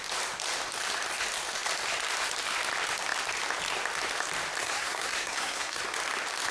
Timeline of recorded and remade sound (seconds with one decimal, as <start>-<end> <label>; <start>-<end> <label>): 0.0-4.6 recorded; 4.6-5.8 remade; 5.8-6.5 recorded